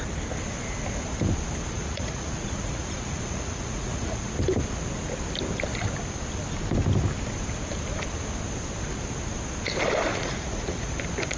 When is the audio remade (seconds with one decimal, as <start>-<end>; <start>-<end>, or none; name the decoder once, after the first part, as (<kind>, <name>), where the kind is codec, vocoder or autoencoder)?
1.8-4.3 (vocoder, Vocos); 10.1-10.9